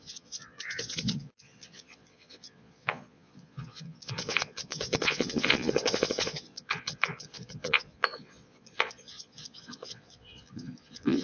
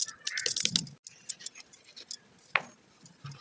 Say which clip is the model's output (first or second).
first